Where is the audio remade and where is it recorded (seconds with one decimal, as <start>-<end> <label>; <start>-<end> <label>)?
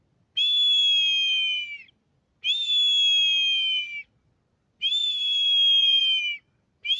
0.0-5.0 recorded; 5.0-6.0 remade; 6.0-7.0 recorded